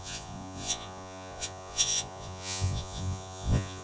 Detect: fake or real fake